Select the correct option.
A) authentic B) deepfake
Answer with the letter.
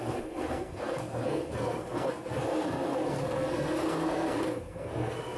B